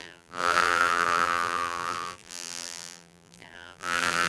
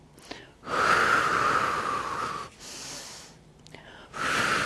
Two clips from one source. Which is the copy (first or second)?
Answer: first